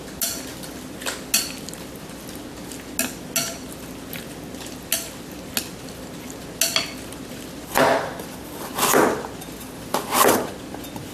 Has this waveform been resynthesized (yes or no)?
no